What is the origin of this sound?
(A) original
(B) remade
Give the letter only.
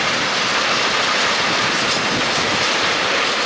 A